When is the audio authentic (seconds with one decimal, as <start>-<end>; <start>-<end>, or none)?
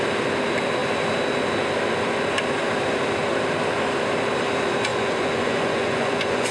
0.0-4.9